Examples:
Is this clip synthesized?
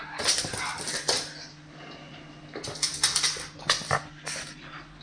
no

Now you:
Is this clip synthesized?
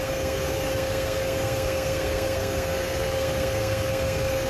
yes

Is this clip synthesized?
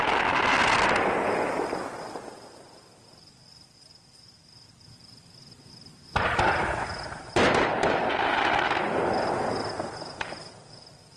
no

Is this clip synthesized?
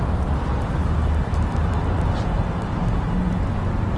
no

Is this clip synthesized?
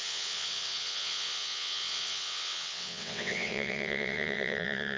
yes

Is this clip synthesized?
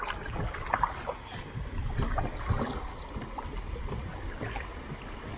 no